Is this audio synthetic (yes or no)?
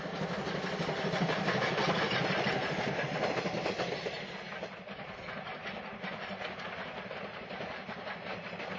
no